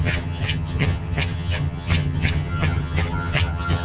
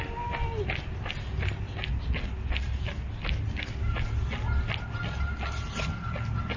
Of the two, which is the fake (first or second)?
first